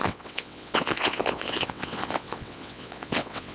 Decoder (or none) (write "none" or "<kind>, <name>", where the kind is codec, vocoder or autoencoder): vocoder, WaveNeXt